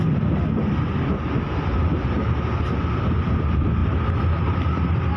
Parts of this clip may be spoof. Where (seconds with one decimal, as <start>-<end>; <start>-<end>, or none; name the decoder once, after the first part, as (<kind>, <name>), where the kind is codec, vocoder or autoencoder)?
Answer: none